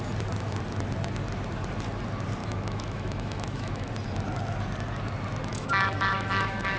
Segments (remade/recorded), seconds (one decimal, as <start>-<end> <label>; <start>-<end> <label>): 0.0-2.4 recorded; 2.4-3.9 remade; 3.9-5.5 recorded; 5.5-6.8 remade